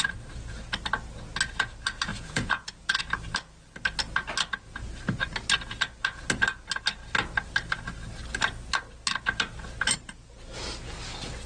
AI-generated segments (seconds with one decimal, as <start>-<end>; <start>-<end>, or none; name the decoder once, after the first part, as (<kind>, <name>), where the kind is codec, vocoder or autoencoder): 2.1-3.0 (vocoder, Vocos)

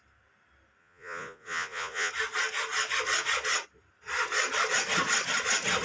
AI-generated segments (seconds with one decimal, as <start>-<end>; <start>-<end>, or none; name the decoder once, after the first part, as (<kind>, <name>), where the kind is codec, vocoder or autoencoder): 0.8-2.1 (vocoder, Vocos)

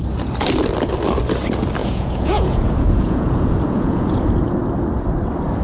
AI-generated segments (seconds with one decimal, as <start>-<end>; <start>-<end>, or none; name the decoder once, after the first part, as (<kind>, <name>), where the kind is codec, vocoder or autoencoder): 1.8-4.3 (vocoder, Vocos)

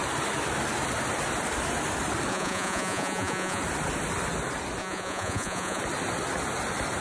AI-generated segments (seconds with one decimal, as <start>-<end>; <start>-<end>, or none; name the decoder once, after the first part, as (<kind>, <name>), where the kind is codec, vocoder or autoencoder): 2.3-3.6 (vocoder, Vocos); 4.8-5.8

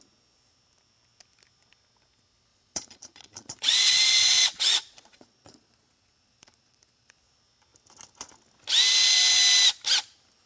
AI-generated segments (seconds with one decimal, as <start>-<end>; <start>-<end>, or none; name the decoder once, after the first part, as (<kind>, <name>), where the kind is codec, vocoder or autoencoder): 2.5-7.1 (vocoder, Vocos)

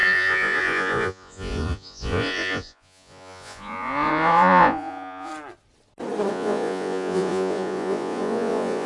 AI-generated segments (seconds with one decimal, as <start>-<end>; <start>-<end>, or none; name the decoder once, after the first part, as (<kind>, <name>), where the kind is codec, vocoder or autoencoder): 0.0-5.3 (vocoder, Vocos); 6.3-8.9